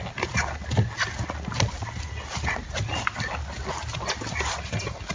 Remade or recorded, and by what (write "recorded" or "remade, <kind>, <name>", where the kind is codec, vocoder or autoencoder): recorded